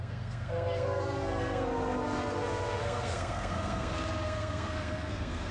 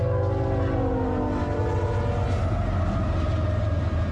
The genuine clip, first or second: second